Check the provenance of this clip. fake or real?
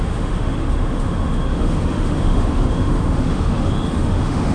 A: fake